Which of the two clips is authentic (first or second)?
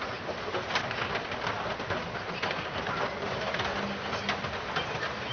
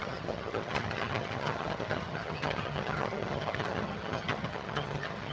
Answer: first